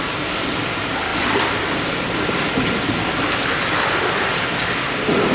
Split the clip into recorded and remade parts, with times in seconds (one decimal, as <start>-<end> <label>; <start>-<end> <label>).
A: 0.0-5.3 recorded